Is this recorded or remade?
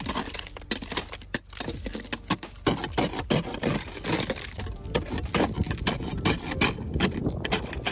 recorded